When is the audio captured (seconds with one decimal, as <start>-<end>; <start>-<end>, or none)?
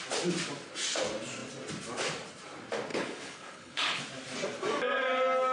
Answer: 0.0-2.9; 4.0-5.5